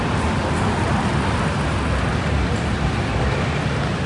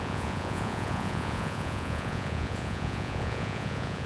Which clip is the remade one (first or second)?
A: second